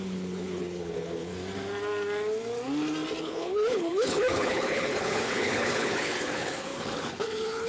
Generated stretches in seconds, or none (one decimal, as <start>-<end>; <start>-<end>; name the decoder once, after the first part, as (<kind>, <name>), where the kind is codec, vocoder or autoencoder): 0.0-1.3 (codec, HILCodec); 3.2-7.7